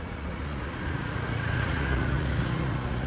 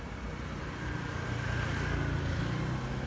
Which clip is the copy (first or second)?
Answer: first